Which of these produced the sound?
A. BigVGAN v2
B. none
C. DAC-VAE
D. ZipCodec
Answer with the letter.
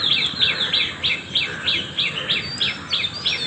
B